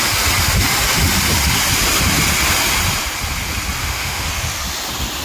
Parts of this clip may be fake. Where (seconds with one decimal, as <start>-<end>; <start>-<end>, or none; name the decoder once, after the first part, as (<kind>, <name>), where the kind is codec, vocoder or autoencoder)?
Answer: 3.8-4.3 (autoencoder, DAC-VAE)